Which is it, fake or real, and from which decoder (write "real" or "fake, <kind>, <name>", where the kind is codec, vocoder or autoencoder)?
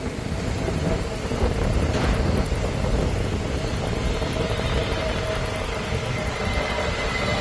real